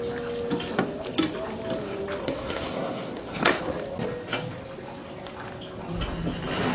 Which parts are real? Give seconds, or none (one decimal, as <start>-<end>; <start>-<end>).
0.0-2.2; 3.6-6.7